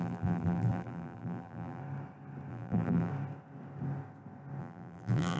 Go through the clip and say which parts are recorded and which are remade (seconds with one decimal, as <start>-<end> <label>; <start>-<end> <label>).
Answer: 0.0-1.8 remade; 1.8-2.5 recorded; 2.5-3.1 remade; 3.1-4.6 recorded; 4.6-5.4 remade